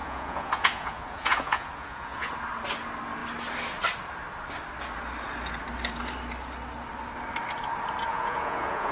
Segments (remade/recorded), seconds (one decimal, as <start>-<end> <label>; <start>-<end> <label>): 0.0-2.3 remade; 2.3-8.1 recorded; 8.1-8.9 remade